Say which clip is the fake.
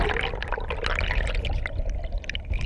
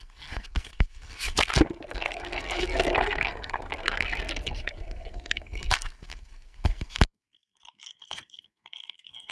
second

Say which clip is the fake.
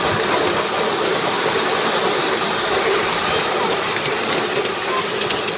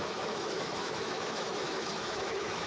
second